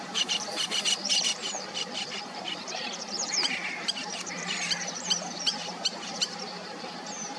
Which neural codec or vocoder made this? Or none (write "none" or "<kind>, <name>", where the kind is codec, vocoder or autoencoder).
vocoder, BigVGAN v2